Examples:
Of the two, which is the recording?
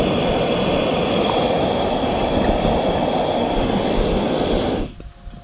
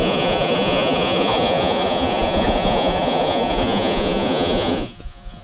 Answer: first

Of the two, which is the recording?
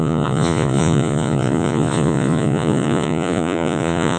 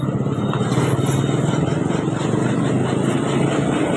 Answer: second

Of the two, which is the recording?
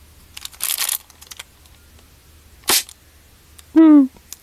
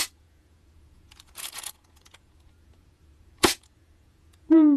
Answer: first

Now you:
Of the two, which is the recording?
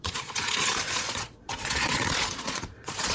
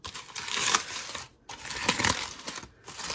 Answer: second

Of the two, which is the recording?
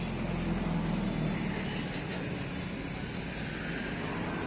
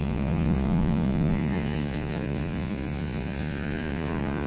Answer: first